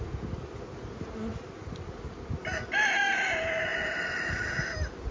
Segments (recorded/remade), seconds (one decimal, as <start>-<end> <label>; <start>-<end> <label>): 0.0-5.1 recorded